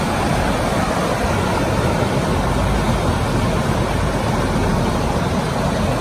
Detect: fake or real real